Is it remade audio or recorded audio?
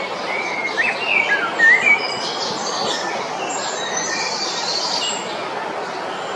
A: recorded